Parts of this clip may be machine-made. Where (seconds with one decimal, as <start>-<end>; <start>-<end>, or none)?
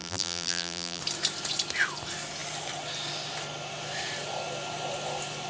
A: 0.0-1.0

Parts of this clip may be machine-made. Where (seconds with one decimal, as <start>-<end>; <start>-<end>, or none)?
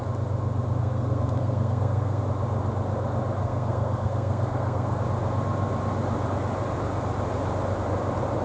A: 0.8-2.2; 3.4-5.0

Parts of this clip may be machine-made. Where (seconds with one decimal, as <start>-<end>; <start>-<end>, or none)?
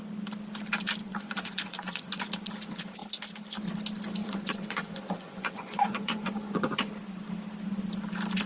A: 1.0-2.2; 4.2-6.9